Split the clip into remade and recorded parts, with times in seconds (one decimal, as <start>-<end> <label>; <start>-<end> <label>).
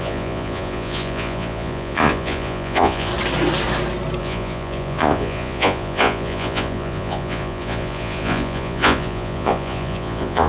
0.0-3.1 remade; 3.1-4.2 recorded; 4.2-10.5 remade